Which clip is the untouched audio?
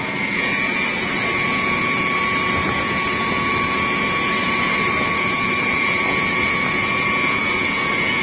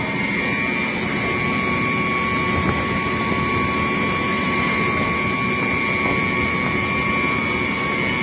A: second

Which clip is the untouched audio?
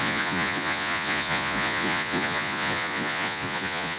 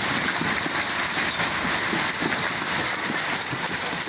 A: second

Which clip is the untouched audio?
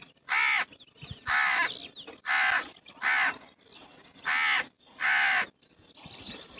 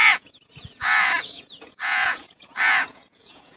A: first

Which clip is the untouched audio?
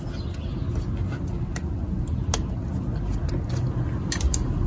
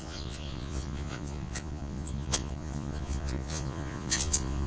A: first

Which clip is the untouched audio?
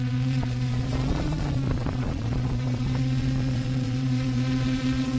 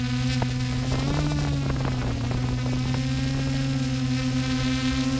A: second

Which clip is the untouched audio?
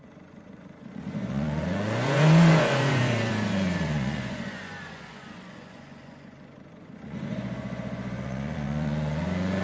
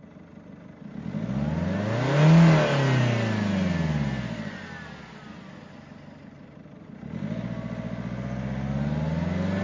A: second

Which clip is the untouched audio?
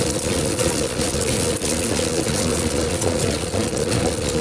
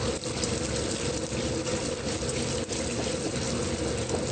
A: second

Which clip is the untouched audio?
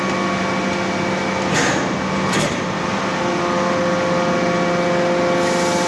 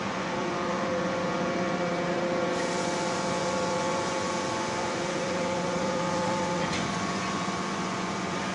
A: first